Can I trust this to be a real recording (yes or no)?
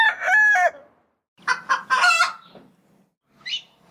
yes